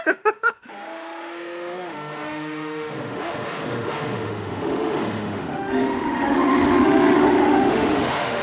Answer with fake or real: fake